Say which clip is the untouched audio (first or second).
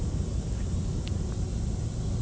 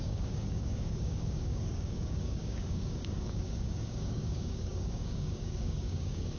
first